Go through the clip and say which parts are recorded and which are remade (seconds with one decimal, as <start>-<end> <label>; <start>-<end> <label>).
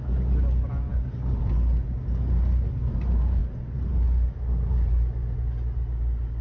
0.0-6.4 recorded